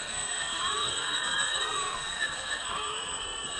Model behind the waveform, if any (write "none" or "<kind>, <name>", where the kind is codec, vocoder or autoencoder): codec, SNAC